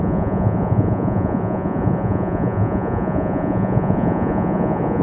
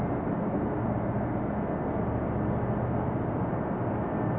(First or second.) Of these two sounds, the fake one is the first